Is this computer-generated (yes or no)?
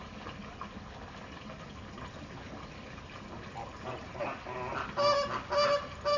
no